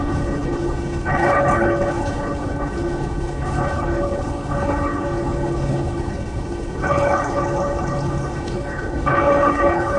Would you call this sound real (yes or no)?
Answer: no